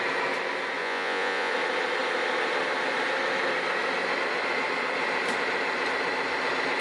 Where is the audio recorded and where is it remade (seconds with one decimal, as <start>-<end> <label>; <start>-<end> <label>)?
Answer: 0.0-0.8 recorded; 0.8-1.5 remade; 1.5-6.8 recorded